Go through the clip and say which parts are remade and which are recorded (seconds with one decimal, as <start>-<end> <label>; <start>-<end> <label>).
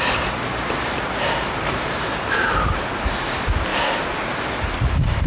0.0-3.7 remade; 3.7-4.6 recorded; 4.6-5.3 remade